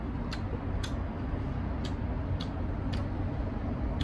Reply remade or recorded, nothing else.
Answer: recorded